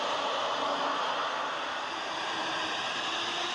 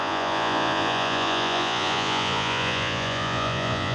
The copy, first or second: second